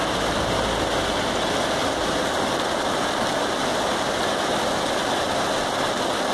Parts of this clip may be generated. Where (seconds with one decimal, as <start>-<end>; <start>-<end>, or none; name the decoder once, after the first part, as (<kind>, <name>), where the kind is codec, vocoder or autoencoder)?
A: 1.8-2.8 (vocoder, BigVGAN v2)